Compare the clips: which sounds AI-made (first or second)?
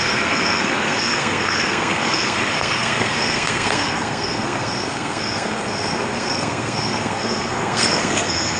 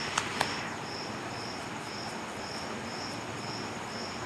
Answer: first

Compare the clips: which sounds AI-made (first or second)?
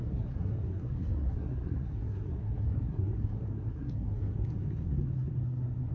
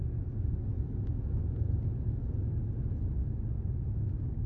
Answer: first